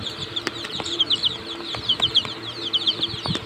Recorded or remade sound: remade